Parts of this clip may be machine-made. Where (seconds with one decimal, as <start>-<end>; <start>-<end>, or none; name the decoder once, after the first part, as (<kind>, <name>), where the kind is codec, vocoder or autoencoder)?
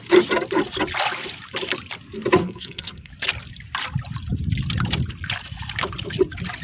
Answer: 2.4-3.1 (codec, SNAC)